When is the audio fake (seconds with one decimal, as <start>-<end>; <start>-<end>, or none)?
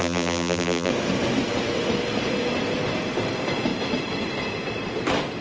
0.0-0.9